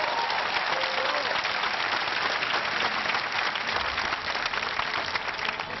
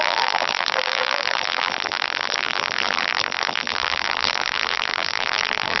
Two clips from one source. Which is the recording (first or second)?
first